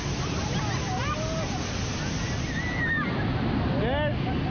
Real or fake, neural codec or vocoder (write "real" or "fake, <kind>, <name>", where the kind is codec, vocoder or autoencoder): real